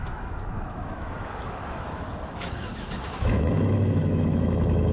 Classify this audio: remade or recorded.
remade